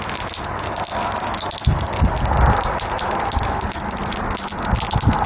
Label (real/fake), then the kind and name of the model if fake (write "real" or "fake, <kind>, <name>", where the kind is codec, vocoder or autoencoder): real